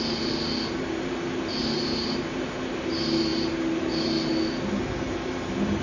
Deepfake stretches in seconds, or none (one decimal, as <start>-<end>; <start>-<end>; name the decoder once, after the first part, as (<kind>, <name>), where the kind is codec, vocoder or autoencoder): none